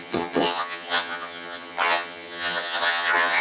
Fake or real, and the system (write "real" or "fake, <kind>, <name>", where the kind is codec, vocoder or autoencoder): fake, vocoder, HiFi-GAN